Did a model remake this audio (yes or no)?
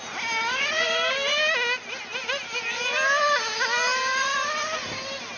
no